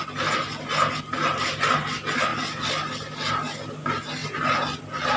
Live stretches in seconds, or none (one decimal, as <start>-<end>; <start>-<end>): 0.0-5.2